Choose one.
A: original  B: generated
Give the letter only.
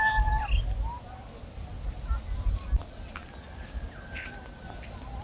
A